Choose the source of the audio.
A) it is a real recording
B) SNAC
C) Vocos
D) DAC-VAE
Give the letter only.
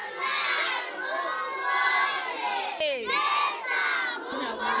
A